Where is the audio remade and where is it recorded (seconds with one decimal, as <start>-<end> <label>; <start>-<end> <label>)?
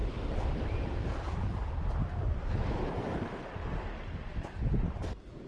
0.0-5.5 recorded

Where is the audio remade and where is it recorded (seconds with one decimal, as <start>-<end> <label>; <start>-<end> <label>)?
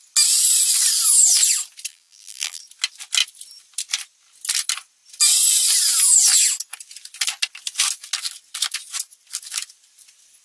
0.0-1.9 recorded; 1.9-2.6 remade; 2.6-10.4 recorded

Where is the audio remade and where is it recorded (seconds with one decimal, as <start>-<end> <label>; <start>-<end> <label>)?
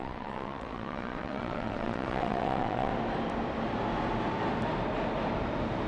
0.0-2.9 remade; 2.9-5.9 recorded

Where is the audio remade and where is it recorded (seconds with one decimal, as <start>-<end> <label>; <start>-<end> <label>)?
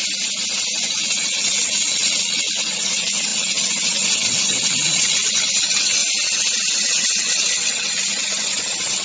0.0-0.8 recorded; 0.8-6.0 remade; 6.0-6.8 recorded; 6.8-9.0 remade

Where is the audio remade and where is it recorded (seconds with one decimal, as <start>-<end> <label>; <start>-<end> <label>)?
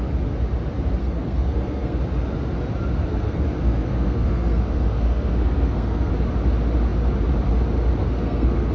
0.0-1.0 recorded; 1.0-2.0 remade; 2.0-3.0 recorded; 3.0-6.1 remade; 6.1-8.0 recorded; 8.0-8.7 remade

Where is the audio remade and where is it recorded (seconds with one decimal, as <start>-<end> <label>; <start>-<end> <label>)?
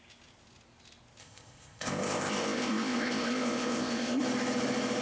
0.0-1.2 recorded; 1.2-4.2 remade; 4.2-5.0 recorded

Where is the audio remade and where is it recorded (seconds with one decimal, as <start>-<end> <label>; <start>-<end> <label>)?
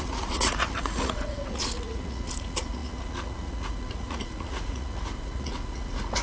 0.0-6.2 remade